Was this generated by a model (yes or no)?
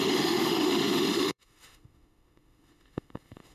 yes